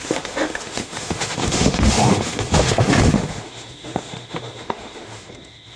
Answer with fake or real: fake